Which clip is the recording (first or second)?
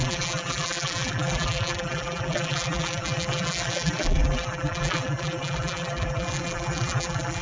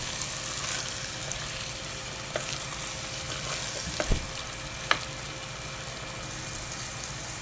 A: second